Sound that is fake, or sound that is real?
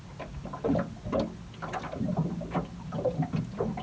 real